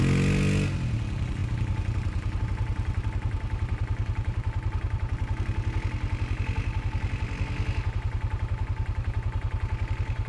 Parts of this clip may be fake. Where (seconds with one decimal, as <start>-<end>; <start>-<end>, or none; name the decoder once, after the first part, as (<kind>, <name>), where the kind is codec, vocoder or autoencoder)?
none